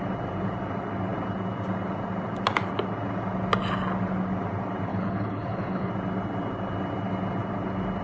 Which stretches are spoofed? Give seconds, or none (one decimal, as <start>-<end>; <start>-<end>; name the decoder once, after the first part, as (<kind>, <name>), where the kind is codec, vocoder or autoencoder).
4.9-5.9 (codec, HILCodec)